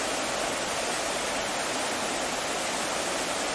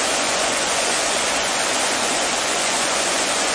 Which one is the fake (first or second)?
second